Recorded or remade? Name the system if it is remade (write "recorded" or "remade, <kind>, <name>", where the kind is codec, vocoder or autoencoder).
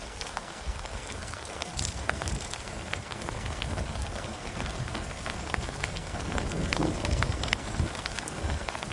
remade, codec, SNAC